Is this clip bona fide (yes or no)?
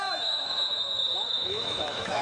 no